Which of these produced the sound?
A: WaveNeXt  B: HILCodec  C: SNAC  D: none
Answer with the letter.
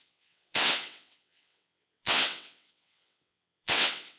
A